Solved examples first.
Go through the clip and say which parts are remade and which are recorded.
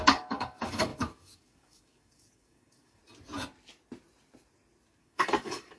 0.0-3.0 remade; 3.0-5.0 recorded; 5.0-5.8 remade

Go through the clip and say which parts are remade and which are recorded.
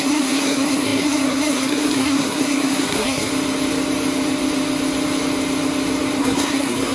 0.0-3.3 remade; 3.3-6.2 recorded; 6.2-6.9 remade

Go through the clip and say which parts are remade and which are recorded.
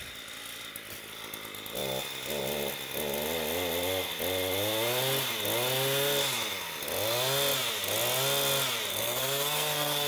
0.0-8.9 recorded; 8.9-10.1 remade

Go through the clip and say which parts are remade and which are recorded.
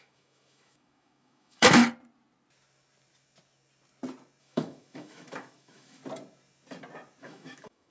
0.0-1.8 remade; 1.8-4.4 recorded; 4.4-6.0 remade; 6.0-7.2 recorded; 7.2-7.9 remade